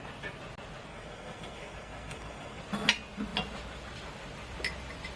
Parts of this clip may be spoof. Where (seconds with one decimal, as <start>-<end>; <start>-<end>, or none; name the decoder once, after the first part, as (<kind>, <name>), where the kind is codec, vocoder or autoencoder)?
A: 0.9-2.6 (codec, SNAC)